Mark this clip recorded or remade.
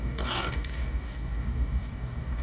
remade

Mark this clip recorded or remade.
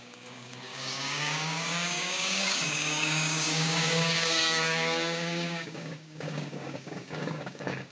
remade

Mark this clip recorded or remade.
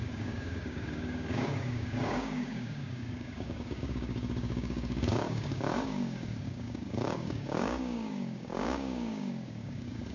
remade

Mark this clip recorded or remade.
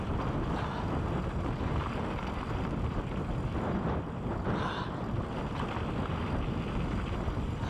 recorded